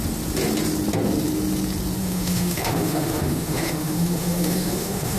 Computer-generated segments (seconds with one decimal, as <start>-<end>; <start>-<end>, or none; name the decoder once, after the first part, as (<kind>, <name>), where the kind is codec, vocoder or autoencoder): 2.0-5.2 (autoencoder, DAC-VAE)